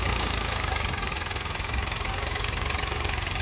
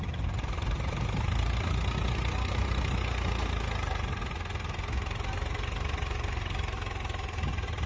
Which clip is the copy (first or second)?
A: first